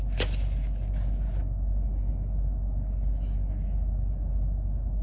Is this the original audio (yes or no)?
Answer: yes